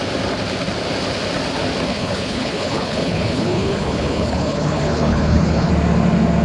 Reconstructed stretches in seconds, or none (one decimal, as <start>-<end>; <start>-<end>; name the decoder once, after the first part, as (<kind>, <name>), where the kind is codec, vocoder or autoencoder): 1.9-5.7 (codec, HILCodec)